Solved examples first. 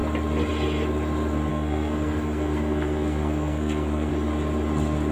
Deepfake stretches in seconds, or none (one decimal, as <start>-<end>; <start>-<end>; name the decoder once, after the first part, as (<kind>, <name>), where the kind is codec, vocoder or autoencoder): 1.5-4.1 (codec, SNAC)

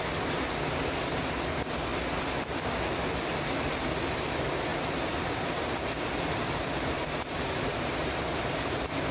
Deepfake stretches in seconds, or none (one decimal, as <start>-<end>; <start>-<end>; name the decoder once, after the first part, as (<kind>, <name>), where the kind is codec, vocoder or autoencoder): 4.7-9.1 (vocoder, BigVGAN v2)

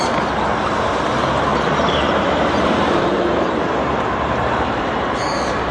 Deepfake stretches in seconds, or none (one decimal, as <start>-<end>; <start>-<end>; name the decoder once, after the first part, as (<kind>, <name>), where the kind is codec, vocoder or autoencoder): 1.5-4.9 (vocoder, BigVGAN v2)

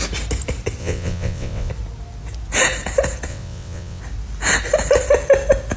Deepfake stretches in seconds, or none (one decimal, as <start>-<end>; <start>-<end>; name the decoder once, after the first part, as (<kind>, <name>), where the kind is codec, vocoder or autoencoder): 0.8-1.7 (vocoder, WaveNeXt); 3.3-4.0